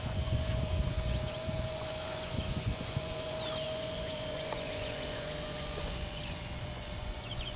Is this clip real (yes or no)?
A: no